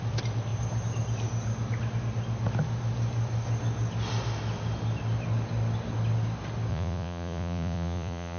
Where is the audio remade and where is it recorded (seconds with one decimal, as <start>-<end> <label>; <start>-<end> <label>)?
0.0-6.7 recorded; 6.7-8.4 remade